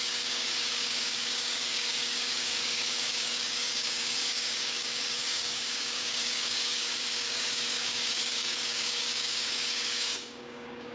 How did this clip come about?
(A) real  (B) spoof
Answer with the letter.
B